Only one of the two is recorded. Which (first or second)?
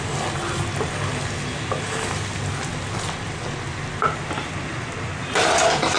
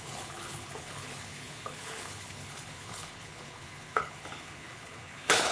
first